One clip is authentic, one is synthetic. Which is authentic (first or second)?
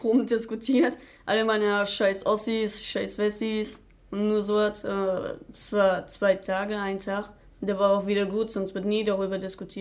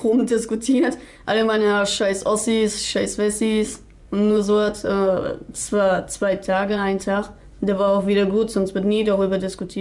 first